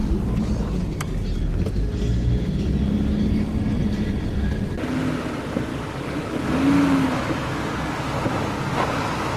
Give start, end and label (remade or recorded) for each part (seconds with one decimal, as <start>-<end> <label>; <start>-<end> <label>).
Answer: 0.0-0.5 remade; 0.5-5.7 recorded; 5.7-6.5 remade; 6.5-9.4 recorded